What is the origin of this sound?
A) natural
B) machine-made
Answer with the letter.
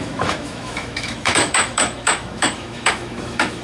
B